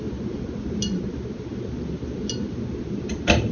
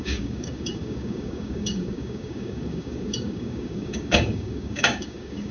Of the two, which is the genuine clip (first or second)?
first